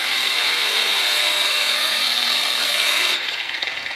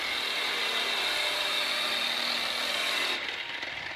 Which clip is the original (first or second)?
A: second